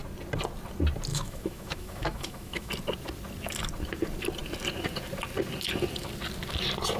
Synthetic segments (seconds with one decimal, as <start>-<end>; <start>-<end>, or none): 1.1-2.7